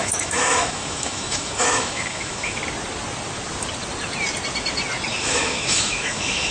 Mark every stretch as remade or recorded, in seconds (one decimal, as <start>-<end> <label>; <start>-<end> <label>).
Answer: 0.0-2.6 remade; 2.6-5.2 recorded; 5.2-6.5 remade